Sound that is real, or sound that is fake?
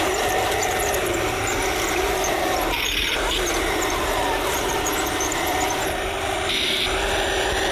fake